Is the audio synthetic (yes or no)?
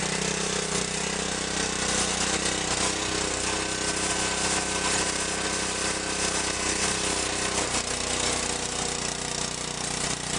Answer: no